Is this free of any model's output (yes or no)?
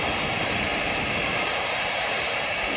no